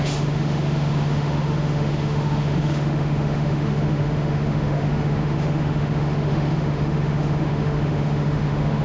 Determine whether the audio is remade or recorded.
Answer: remade